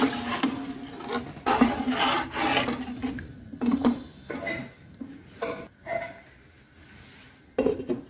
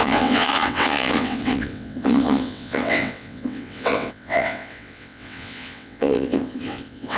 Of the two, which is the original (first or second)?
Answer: first